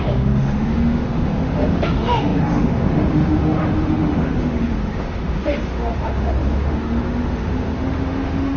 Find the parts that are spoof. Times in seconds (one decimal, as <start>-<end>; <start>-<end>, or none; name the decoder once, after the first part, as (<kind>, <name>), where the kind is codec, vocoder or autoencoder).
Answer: 0.0-8.6 (autoencoder, DAC-VAE)